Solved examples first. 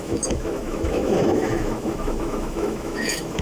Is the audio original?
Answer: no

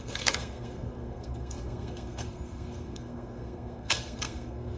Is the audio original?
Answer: no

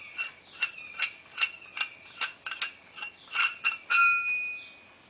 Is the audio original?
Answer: yes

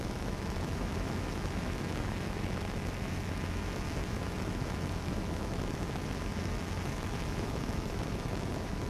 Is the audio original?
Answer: no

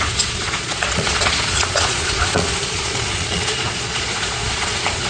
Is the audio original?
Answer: no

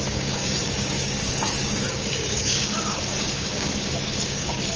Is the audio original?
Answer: no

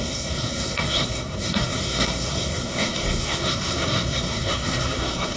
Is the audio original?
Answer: no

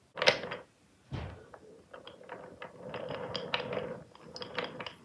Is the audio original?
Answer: yes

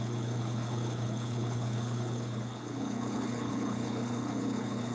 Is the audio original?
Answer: no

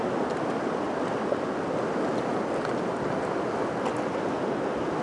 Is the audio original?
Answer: yes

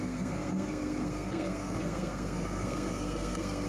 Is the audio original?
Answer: no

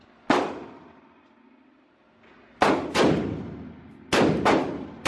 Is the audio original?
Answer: yes